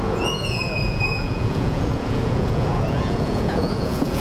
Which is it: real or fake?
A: fake